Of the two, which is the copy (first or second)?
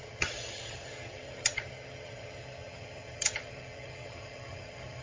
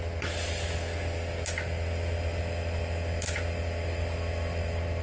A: first